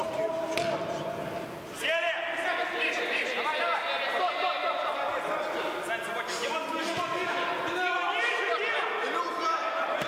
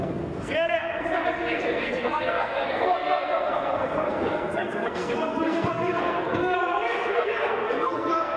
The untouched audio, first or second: first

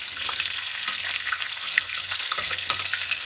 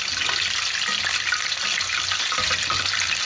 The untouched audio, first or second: second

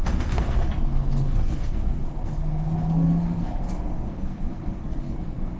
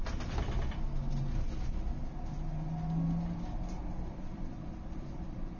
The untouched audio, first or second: second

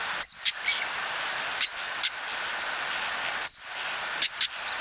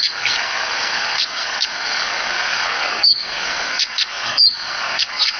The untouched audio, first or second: first